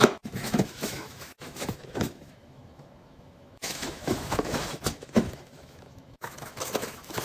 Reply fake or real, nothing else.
fake